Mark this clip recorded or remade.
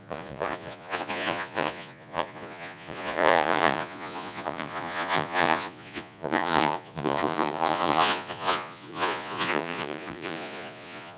remade